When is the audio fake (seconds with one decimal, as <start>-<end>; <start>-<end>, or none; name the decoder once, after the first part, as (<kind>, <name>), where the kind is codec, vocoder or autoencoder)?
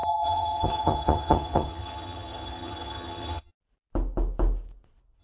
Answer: 0.0-3.5 (vocoder, HiFi-GAN)